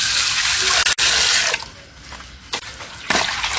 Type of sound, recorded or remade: recorded